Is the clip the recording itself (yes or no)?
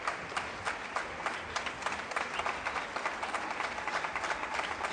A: yes